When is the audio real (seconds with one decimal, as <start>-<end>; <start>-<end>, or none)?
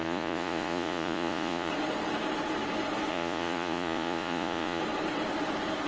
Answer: 1.7-3.1; 4.8-5.9